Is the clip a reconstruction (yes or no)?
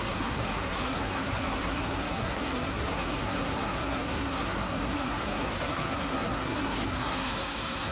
yes